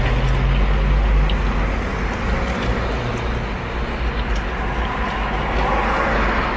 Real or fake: real